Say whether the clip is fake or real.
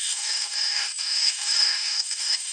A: fake